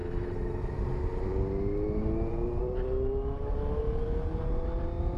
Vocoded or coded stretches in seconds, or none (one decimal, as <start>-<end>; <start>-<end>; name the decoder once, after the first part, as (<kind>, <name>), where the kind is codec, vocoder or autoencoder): 0.0-0.6 (autoencoder, DAC-VAE)